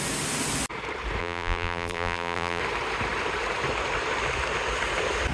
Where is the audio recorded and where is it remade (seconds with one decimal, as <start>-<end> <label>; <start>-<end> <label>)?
0.0-1.2 recorded; 1.2-2.6 remade; 2.6-5.3 recorded

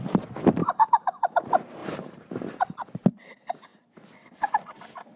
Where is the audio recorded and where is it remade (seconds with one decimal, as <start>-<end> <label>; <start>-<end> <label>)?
0.0-0.6 recorded; 0.6-1.3 remade; 1.3-1.8 recorded; 1.8-2.6 remade; 2.6-5.2 recorded

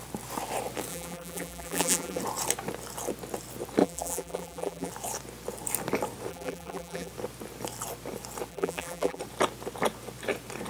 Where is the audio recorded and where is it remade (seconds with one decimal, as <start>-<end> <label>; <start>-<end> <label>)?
0.0-0.9 recorded; 0.9-2.2 remade; 2.2-3.8 recorded; 3.8-4.9 remade; 4.9-6.3 recorded; 6.3-7.1 remade; 7.1-8.5 recorded; 8.5-9.2 remade; 9.2-10.7 recorded

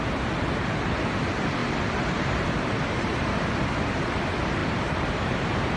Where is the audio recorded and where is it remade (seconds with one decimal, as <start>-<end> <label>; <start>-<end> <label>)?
0.0-1.6 recorded; 1.6-3.6 remade; 3.6-4.6 recorded; 4.6-5.8 remade

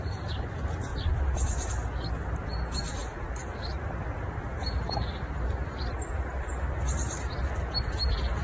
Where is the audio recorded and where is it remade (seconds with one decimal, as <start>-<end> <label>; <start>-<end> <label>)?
0.0-0.9 recorded; 0.9-1.7 remade; 1.7-3.0 recorded; 3.0-6.5 remade; 6.5-8.4 recorded